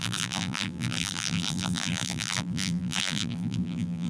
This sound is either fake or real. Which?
fake